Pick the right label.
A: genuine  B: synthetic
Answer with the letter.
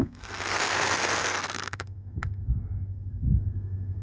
B